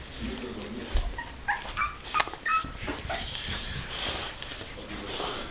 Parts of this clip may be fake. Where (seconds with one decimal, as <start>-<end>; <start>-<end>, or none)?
2.5-4.4